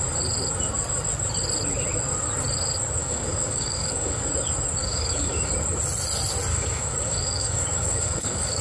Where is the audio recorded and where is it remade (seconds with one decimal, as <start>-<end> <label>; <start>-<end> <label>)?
0.0-3.0 recorded; 3.0-4.3 remade; 4.3-4.8 recorded; 4.8-5.5 remade; 5.5-6.5 recorded; 6.5-8.6 remade